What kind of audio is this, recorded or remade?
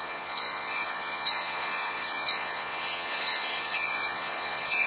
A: remade